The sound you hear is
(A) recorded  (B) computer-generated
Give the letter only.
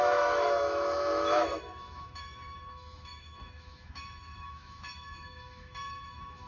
B